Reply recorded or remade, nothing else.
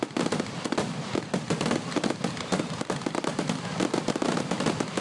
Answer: remade